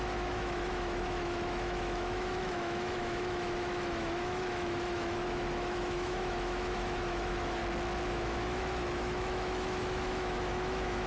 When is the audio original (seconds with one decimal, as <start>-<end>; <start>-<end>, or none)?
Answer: 7.6-8.1